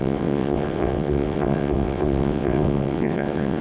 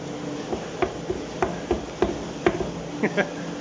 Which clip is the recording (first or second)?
second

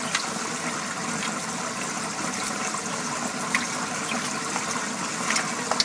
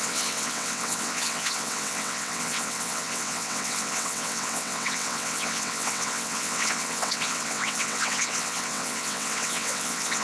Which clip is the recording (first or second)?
first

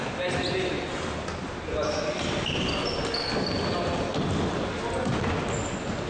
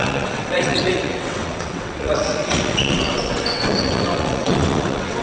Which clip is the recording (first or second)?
first